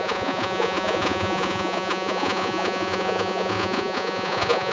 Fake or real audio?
fake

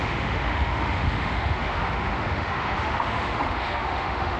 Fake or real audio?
fake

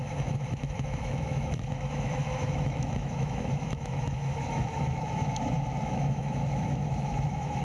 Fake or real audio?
fake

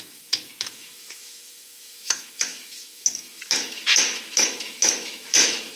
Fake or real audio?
fake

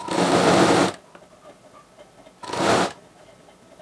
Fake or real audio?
real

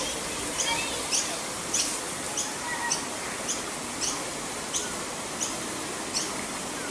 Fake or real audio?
fake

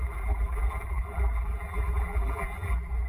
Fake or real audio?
fake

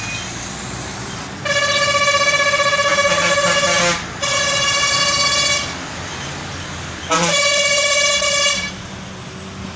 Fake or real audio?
real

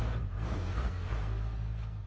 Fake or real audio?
fake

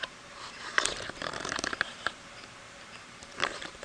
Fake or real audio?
fake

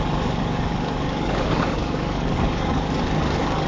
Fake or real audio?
fake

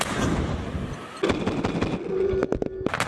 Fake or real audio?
real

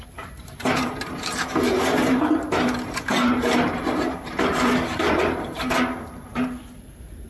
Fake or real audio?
fake